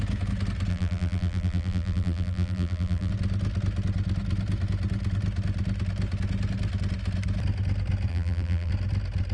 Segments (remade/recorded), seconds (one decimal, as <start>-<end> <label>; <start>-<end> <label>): 0.0-0.7 recorded; 0.7-3.1 remade; 3.1-8.1 recorded; 8.1-8.7 remade; 8.7-9.3 recorded